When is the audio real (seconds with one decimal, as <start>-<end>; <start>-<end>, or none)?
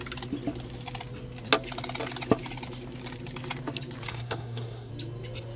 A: 0.0-4.1; 4.9-5.6